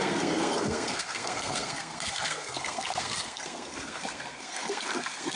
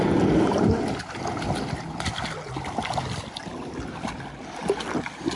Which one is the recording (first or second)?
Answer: second